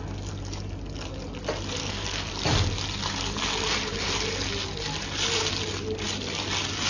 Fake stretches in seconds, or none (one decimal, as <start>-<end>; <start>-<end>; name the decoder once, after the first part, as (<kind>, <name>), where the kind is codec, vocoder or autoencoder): 1.8-2.3 (codec, SNAC)

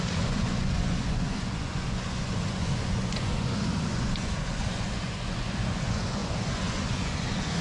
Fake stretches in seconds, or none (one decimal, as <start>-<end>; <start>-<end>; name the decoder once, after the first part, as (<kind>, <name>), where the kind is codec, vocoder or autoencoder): 0.0-7.6 (vocoder, Vocos)

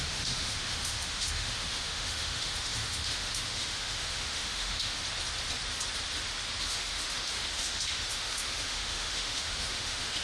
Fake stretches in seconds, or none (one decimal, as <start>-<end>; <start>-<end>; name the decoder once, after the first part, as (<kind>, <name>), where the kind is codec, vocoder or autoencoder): 0.0-5.0 (autoencoder, DAC-VAE); 6.6-10.2

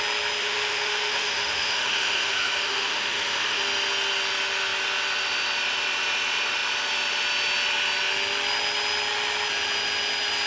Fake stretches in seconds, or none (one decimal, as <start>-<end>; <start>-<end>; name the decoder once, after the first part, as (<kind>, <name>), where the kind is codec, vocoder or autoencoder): 0.4-3.6 (autoencoder, DAC-VAE)

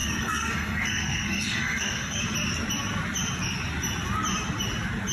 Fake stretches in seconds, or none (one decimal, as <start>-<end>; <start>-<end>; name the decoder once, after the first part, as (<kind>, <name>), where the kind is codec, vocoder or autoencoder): 0.0-2.2 (codec, SNAC)

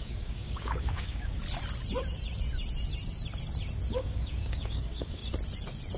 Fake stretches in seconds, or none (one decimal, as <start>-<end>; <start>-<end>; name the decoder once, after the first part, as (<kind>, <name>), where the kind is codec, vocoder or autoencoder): 0.0-1.4 (codec, DAC); 3.9-5.2

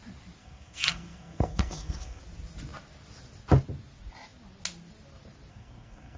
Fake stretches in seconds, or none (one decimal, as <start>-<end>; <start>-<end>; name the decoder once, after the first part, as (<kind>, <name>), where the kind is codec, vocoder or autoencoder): 0.4-2.2 (codec, SNAC); 5.5-6.2